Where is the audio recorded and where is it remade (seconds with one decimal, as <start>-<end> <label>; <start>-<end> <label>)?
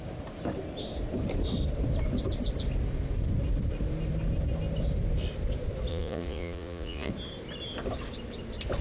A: 0.0-5.9 recorded; 5.9-7.1 remade; 7.1-8.8 recorded